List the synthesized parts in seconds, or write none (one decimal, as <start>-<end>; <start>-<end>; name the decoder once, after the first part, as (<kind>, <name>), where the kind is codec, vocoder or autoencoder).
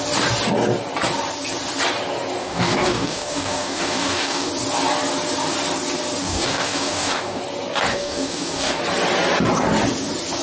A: 2.4-4.5 (codec, DAC); 6.2-7.4; 7.9-8.8